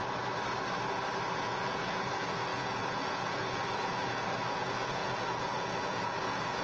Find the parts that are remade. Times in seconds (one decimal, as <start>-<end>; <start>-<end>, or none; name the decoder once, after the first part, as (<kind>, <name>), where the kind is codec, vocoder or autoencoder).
1.4-6.6 (vocoder, Vocos)